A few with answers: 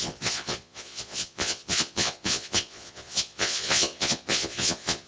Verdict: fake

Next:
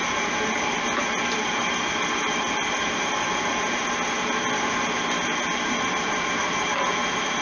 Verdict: real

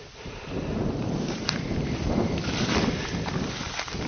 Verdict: fake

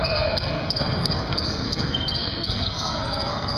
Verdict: fake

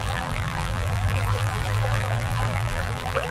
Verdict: fake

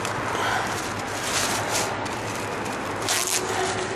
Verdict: real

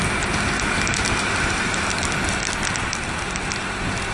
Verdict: real